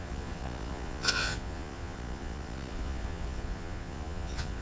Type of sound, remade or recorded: remade